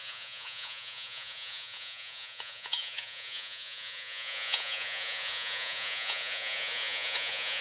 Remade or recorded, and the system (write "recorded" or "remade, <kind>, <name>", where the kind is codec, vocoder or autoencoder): remade, vocoder, Vocos